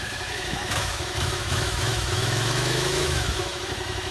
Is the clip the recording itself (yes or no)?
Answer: no